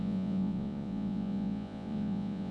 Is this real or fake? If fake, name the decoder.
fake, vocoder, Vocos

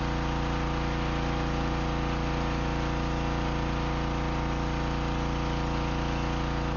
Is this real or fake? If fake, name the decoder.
real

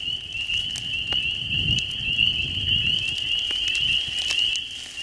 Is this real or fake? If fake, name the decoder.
real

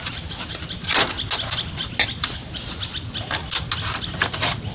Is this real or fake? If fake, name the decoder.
real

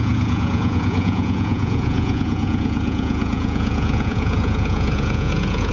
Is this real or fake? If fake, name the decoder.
fake, vocoder, Vocos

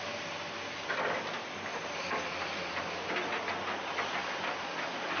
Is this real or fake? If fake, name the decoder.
real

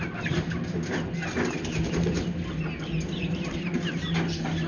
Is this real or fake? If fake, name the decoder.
real